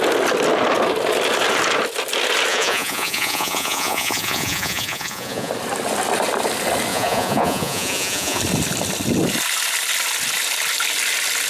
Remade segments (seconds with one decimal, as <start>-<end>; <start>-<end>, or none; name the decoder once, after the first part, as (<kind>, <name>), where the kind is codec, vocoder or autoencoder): 2.5-5.5 (vocoder, Vocos); 6.9-8.4